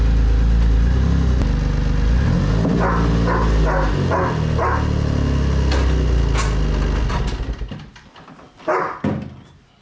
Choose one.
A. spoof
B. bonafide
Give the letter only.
B